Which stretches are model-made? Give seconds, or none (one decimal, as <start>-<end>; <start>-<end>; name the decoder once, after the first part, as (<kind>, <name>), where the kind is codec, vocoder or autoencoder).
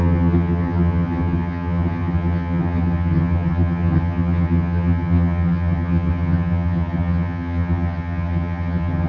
0.0-9.1 (vocoder, HiFi-GAN)